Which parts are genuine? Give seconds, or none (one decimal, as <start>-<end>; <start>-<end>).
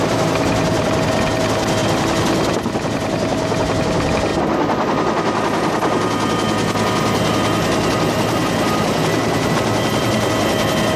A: 0.0-11.0